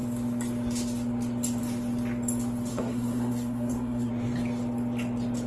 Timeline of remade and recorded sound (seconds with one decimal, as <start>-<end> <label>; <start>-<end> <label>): 0.0-2.7 recorded; 2.7-4.1 remade; 4.1-5.5 recorded